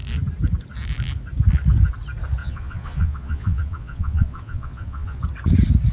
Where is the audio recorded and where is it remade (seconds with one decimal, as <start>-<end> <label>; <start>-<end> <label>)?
0.0-2.4 recorded; 2.4-5.2 remade; 5.2-5.9 recorded